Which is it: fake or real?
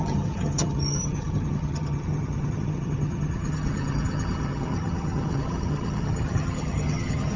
fake